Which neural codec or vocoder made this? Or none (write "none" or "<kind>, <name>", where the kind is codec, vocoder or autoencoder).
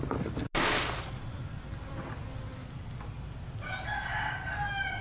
none